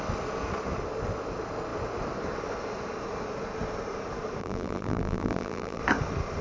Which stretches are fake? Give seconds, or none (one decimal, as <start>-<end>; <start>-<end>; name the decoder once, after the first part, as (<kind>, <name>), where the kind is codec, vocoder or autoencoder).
4.4-5.8 (vocoder, BigVGAN v2)